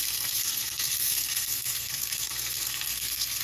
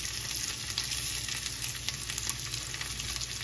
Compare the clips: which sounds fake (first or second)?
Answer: first